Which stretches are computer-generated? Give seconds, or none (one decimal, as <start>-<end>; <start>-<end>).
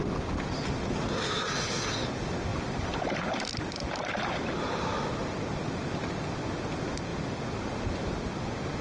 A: none